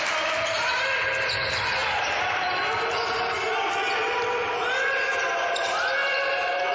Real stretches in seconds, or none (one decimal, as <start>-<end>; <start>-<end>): 0.0-6.7